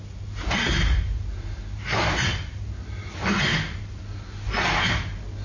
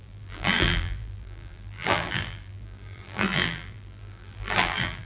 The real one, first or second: first